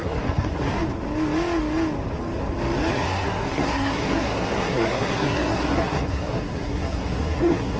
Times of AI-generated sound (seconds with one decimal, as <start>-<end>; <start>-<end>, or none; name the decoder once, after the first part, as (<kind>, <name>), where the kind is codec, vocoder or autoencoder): 0.0-0.7 (codec, SNAC); 2.9-7.8